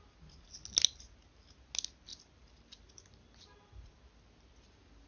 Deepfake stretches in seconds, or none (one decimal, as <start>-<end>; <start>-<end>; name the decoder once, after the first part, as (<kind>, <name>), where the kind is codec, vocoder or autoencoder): 2.1-3.9 (vocoder, BigVGAN v2)